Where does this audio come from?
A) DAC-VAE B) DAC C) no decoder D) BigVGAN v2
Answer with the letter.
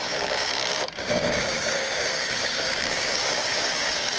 B